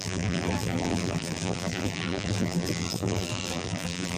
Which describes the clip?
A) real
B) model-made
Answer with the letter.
B